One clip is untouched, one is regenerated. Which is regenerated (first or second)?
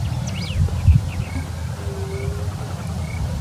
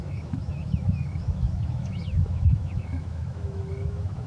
second